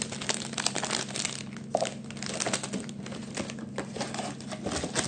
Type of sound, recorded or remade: recorded